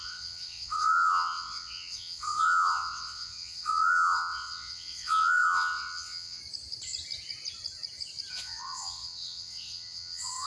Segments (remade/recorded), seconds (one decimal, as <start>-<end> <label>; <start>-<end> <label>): 0.0-6.4 remade; 6.4-8.3 recorded; 8.3-10.5 remade